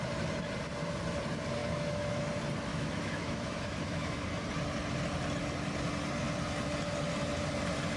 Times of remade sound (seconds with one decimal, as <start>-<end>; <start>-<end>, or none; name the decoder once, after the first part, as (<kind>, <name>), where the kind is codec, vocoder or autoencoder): 1.6-2.2 (autoencoder, DAC-VAE); 2.7-4.3